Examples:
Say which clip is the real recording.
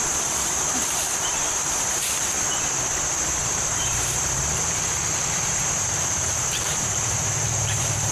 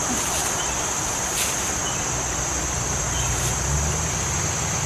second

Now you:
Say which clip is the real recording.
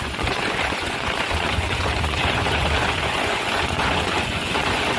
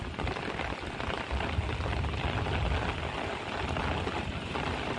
second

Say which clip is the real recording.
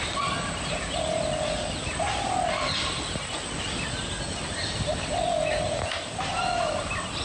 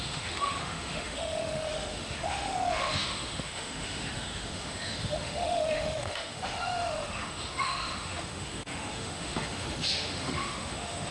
first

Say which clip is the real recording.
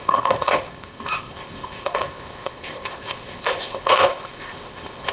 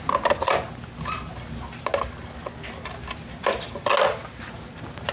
second